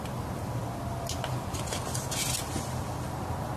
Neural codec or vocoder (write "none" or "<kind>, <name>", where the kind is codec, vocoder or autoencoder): none